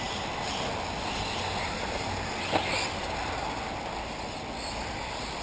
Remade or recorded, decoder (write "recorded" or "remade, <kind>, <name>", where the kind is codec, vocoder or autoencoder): recorded